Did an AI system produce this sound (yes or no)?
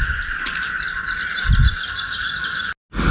no